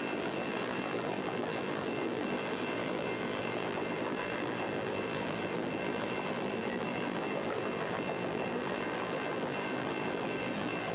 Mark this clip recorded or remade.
remade